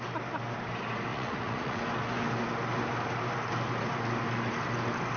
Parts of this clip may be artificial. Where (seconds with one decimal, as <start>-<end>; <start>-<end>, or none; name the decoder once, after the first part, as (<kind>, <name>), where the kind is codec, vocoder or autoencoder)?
1.1-1.8 (vocoder, Vocos)